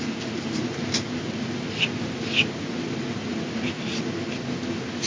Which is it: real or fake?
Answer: real